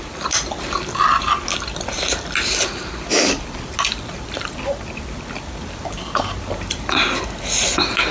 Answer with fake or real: real